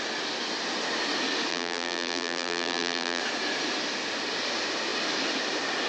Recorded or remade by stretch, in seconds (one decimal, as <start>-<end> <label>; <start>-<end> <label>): 0.0-1.5 recorded; 1.5-3.2 remade; 3.2-5.9 recorded